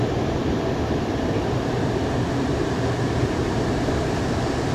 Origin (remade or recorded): recorded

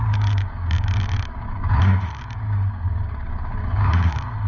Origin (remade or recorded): remade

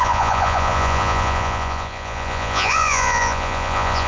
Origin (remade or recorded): remade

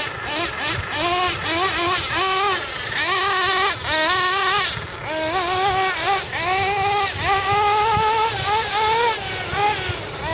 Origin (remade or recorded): recorded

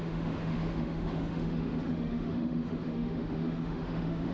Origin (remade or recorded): remade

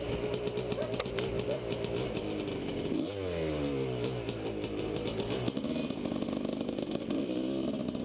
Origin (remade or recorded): recorded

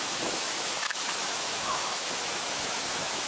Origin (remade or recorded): remade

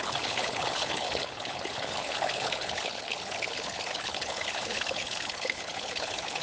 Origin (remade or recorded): remade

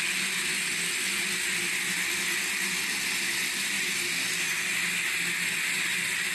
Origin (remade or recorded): recorded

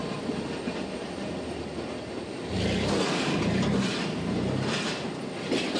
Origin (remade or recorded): recorded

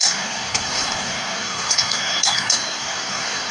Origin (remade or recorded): remade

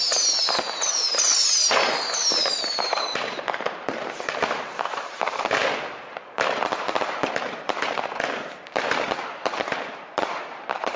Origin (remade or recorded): remade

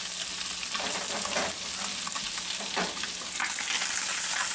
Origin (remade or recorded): recorded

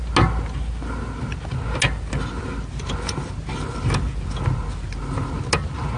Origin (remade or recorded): recorded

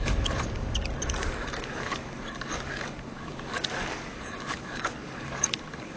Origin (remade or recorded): remade